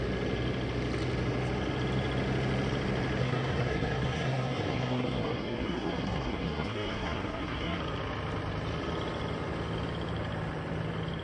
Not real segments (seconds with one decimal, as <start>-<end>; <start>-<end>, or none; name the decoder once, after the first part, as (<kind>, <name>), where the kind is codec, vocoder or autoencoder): 3.2-7.8 (codec, SNAC)